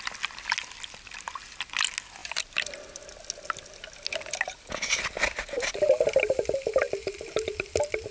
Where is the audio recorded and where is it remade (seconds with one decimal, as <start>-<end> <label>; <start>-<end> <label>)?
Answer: 0.0-8.1 recorded